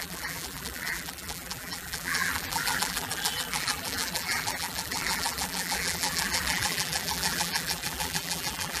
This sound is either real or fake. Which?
fake